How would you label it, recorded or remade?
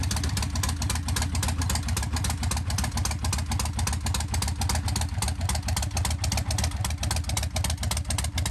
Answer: recorded